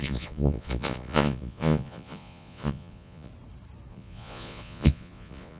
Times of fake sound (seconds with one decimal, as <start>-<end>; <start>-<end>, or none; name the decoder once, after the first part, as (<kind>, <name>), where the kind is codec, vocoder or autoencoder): 0.0-3.3 (vocoder, Vocos); 3.9-5.6